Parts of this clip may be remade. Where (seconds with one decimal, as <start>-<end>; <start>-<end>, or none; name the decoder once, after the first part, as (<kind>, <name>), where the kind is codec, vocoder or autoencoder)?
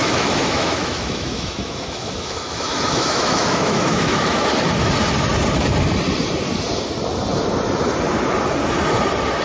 0.0-4.5 (autoencoder, DAC-VAE)